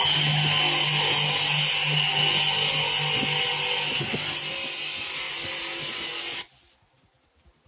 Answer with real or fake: real